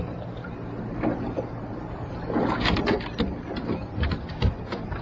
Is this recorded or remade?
recorded